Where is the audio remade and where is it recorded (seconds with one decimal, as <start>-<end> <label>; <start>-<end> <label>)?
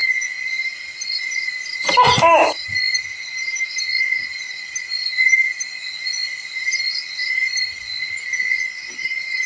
0.0-9.5 recorded